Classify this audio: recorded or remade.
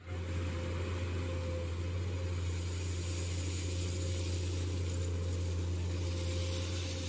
recorded